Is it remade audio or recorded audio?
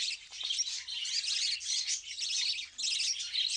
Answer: recorded